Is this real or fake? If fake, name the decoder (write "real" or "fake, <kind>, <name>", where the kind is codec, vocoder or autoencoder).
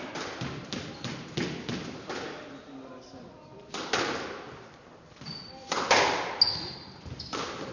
real